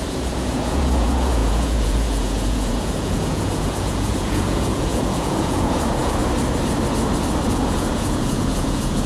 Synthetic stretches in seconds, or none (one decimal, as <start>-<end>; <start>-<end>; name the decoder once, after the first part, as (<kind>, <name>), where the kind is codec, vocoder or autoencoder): 0.0-6.2 (vocoder, Vocos); 7.5-9.1